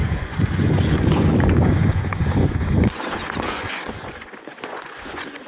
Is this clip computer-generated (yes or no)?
yes